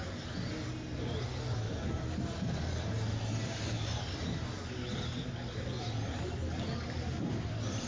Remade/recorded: recorded